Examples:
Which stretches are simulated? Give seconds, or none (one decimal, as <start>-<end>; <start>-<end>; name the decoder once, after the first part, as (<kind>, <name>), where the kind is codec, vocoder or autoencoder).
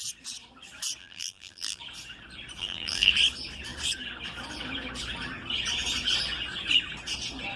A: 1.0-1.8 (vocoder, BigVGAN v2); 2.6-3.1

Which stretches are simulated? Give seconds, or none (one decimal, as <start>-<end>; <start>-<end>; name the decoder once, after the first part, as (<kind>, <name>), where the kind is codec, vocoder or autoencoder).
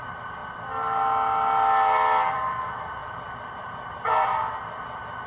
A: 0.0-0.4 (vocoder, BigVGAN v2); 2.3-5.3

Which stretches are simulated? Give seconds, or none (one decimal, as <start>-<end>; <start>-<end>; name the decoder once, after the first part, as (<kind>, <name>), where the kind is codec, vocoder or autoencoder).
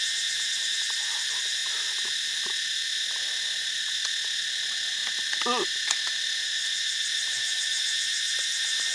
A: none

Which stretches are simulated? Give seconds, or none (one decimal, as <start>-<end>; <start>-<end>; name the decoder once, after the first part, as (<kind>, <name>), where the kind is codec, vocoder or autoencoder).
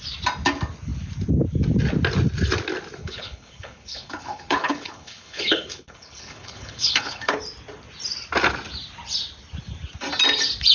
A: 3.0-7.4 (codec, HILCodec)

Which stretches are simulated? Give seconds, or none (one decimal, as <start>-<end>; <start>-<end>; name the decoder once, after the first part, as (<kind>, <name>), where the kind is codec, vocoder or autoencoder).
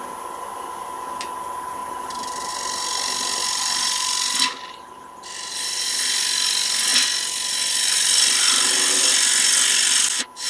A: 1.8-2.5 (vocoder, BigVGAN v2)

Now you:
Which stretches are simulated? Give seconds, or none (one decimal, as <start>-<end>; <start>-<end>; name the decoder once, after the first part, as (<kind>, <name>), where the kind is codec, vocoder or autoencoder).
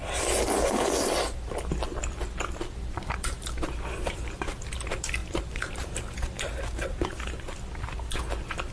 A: 5.2-7.0 (vocoder, BigVGAN v2)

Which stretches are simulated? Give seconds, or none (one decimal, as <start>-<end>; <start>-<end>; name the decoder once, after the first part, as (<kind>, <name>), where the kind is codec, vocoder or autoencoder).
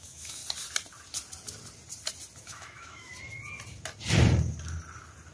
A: 0.0-0.4 (autoencoder, DAC-VAE); 2.4-3.1